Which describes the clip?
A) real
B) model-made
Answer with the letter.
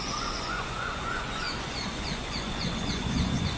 B